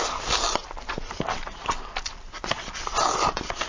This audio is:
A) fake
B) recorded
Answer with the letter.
B